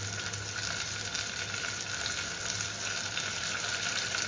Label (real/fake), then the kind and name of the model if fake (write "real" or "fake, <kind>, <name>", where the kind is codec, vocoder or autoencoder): real